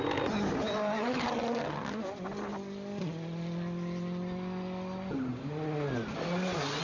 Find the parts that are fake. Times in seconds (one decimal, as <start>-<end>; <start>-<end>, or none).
none